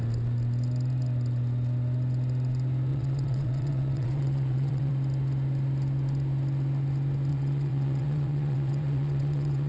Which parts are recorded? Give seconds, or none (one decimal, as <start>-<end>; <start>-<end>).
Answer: 0.0-2.9; 4.9-7.3